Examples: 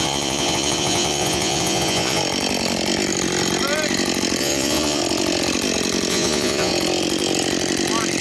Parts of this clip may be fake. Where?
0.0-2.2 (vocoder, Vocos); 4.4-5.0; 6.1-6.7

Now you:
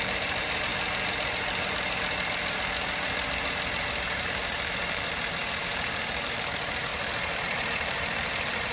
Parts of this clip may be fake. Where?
0.0-0.7 (vocoder, BigVGAN v2); 4.2-6.9; 7.4-8.7